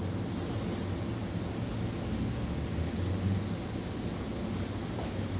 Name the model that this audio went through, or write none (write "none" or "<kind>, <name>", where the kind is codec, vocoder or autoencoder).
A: none